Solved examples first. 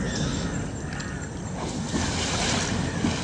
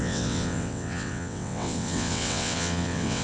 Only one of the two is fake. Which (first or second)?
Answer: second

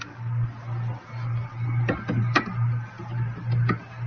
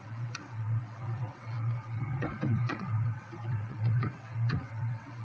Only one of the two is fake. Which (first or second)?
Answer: second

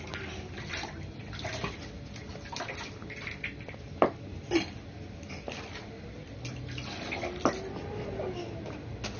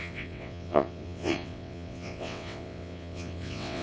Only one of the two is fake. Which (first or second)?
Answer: second